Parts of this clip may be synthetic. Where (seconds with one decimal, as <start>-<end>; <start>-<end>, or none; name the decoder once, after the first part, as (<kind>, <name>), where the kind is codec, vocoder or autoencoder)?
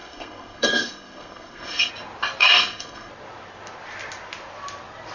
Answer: 0.0-1.9 (codec, SNAC); 2.4-3.1